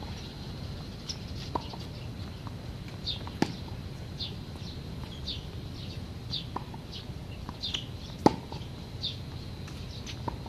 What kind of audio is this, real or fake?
real